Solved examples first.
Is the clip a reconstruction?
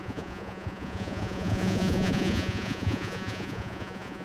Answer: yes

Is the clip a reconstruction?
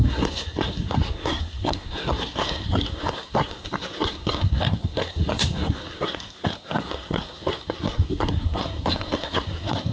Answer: yes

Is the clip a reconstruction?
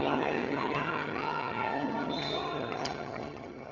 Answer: yes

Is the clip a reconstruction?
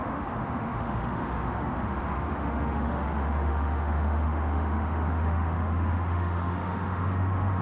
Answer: yes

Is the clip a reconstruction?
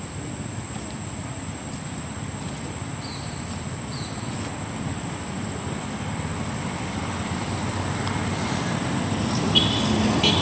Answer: no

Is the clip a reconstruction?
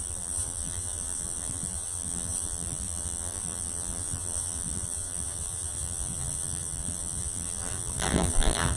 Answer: yes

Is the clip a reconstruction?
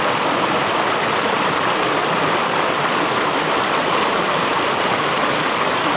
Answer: no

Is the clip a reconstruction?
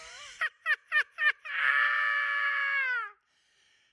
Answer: yes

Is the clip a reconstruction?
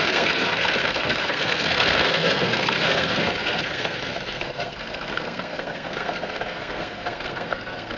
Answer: yes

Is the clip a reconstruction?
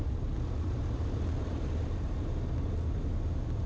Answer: no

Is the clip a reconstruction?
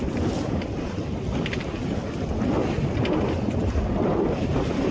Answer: no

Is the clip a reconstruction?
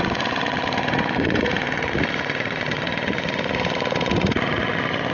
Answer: yes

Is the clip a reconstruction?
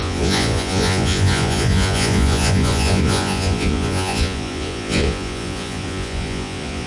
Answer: yes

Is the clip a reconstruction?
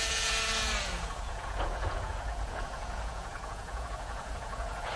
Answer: yes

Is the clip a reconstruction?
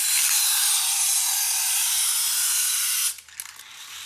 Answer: no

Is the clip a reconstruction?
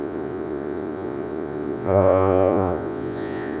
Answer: yes